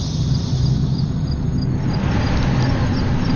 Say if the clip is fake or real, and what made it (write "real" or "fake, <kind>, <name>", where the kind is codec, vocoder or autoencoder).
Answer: real